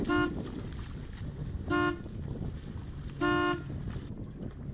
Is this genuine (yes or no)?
yes